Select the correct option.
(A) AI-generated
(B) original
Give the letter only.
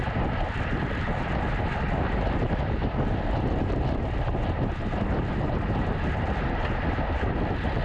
B